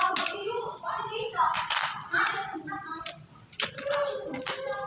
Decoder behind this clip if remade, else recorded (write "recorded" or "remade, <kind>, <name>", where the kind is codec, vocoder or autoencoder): recorded